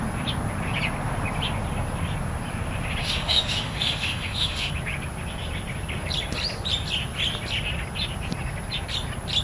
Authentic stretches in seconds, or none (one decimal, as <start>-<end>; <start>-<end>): 0.0-3.0; 4.7-9.4